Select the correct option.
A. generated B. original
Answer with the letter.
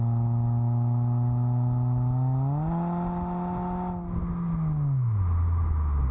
B